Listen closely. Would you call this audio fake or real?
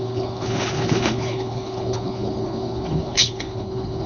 fake